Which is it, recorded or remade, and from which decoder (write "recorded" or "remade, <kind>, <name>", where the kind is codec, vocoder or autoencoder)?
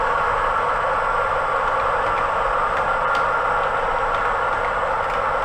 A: recorded